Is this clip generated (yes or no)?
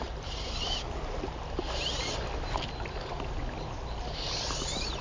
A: no